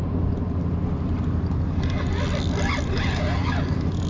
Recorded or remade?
recorded